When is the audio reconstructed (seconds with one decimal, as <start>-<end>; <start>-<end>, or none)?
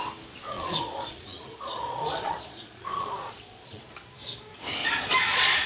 0.5-3.9; 4.8-5.7